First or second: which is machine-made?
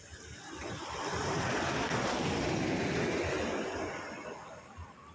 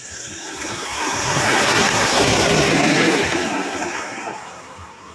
second